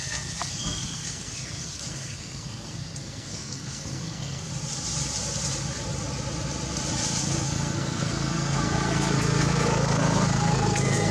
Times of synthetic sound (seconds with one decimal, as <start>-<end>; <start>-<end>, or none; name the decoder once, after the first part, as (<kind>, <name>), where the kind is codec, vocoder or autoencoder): 0.0-4.5 (codec, SNAC); 7.2-11.1